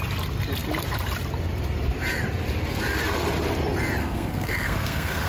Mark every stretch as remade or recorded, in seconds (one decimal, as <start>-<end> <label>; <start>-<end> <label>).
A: 0.0-4.0 recorded; 4.0-5.3 remade